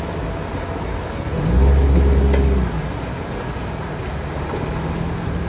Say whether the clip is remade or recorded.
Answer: recorded